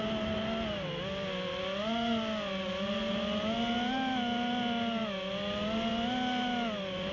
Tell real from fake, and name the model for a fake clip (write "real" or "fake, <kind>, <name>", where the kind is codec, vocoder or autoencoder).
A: real